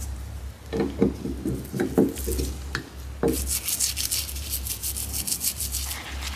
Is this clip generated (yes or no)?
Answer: no